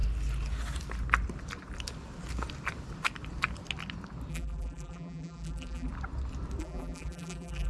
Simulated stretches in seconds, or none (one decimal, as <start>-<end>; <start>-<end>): 4.3-5.9; 6.6-7.7